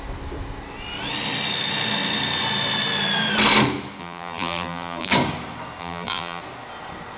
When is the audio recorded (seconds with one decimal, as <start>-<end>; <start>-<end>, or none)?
0.0-4.0; 5.1-5.8; 6.4-7.2